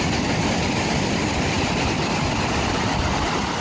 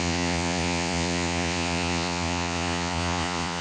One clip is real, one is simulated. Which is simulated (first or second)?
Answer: second